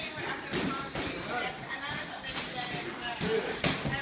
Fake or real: real